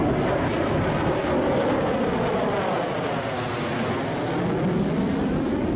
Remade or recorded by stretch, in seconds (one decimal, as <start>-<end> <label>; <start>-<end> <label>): 0.0-5.8 recorded